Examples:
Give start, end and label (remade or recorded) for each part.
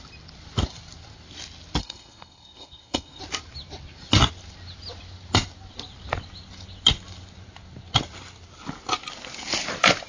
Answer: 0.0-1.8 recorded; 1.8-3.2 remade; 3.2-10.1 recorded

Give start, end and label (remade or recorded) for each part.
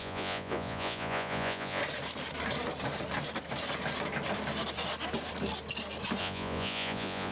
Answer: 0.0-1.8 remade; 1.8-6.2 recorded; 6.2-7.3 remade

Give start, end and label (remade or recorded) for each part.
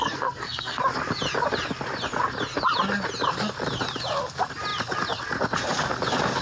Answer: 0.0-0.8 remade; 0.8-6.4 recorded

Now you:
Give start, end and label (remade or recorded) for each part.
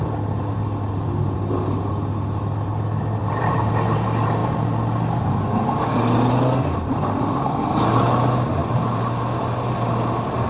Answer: 0.0-3.2 recorded; 3.2-3.7 remade; 3.7-8.6 recorded; 8.6-9.7 remade; 9.7-10.5 recorded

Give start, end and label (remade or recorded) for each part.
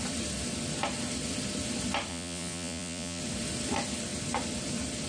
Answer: 0.0-2.1 recorded; 2.1-3.2 remade; 3.2-5.1 recorded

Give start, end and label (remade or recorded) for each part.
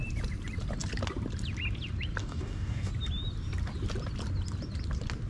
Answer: 0.0-2.2 recorded; 2.2-2.9 remade; 2.9-5.3 recorded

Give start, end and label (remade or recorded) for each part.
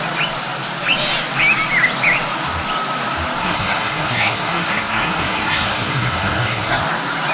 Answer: 0.0-3.4 recorded; 3.4-6.8 remade; 6.8-7.3 recorded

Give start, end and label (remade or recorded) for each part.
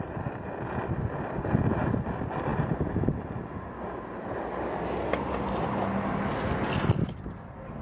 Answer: 0.0-7.8 recorded